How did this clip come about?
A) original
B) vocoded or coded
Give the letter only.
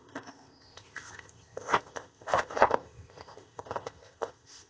B